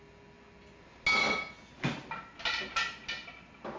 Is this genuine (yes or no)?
yes